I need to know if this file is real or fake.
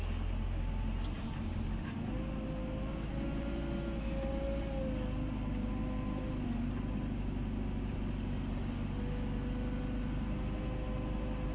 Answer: real